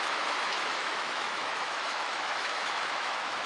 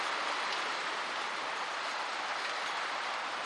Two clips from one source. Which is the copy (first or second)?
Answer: first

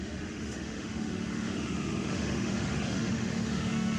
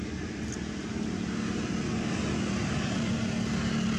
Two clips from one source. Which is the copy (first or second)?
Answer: first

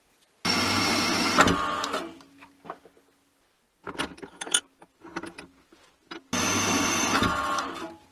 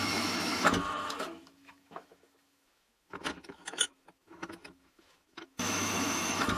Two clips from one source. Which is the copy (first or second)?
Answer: second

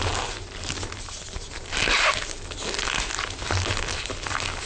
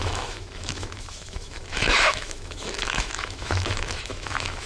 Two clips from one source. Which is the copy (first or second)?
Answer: second